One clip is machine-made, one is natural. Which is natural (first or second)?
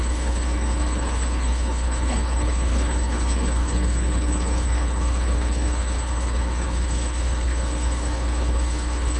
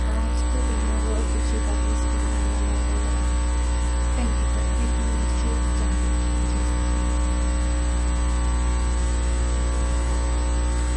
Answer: second